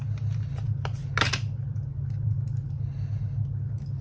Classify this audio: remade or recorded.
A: recorded